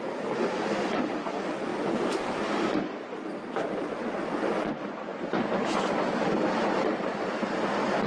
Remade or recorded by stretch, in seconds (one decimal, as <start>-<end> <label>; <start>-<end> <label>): 0.0-1.7 remade; 1.7-4.3 recorded; 4.3-5.1 remade; 5.1-6.5 recorded; 6.5-8.1 remade

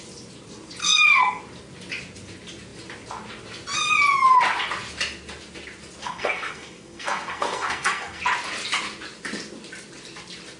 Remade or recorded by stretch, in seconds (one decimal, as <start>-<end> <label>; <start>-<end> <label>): 0.0-0.8 recorded; 0.8-1.4 remade; 1.4-6.0 recorded; 6.0-8.2 remade; 8.2-10.6 recorded

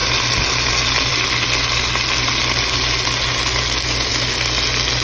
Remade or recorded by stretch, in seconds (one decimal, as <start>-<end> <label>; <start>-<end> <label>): 0.0-5.0 recorded

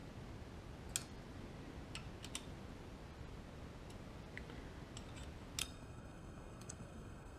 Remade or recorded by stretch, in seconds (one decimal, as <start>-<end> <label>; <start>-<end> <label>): 0.0-5.6 recorded; 5.6-7.4 remade

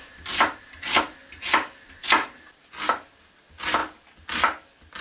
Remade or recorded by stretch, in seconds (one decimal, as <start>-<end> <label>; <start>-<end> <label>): 0.0-5.0 recorded

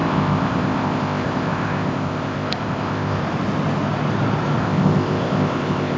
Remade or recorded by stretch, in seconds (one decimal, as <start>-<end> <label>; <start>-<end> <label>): 0.0-3.2 remade; 3.2-4.6 recorded; 4.6-6.0 remade

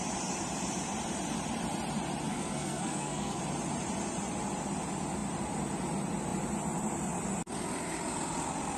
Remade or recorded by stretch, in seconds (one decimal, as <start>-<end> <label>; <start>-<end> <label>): 0.0-2.3 recorded; 2.3-3.4 remade; 3.4-8.8 recorded